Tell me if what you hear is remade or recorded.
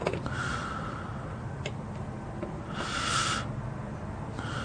recorded